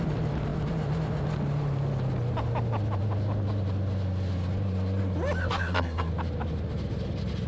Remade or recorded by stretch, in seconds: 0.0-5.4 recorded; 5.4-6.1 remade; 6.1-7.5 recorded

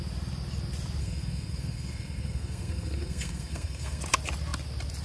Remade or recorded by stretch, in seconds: 0.0-1.0 recorded; 1.0-4.0 remade; 4.0-5.0 recorded